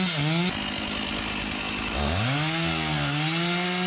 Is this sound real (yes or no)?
yes